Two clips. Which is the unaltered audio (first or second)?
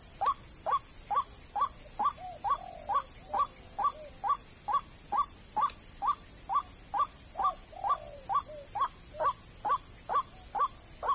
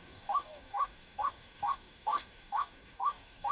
first